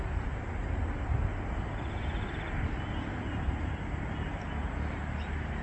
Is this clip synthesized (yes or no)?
no